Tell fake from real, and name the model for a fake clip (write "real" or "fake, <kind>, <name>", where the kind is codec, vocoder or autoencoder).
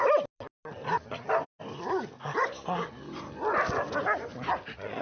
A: real